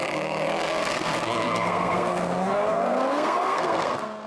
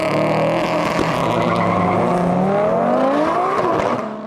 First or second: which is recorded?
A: second